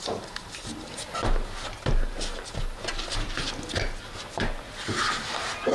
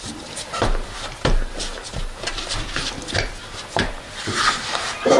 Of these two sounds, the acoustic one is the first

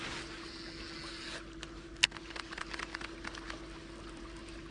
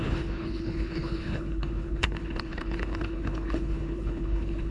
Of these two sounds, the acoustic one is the first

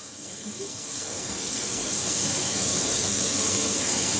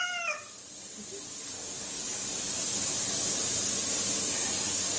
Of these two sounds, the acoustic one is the second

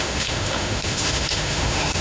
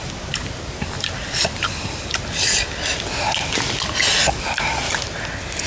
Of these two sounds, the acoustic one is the second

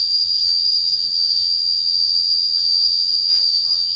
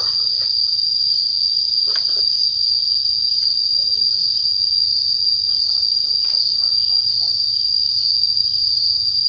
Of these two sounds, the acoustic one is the second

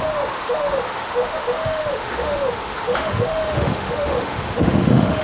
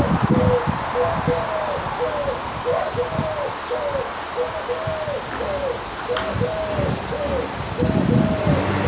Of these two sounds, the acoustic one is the second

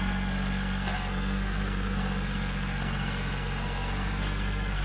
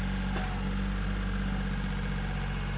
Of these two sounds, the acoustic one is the second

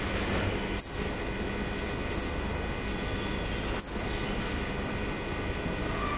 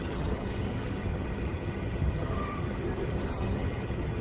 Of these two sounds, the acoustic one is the first